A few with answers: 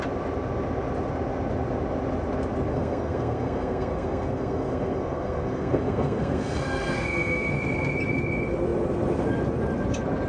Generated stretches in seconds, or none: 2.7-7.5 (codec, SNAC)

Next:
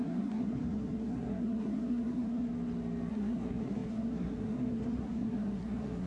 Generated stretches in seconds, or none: 0.0-2.5 (codec, SNAC); 3.1-6.1

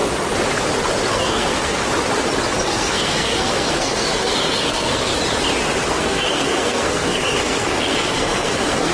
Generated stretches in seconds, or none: 1.1-1.8 (codec, SNAC); 2.6-5.1; 5.9-8.9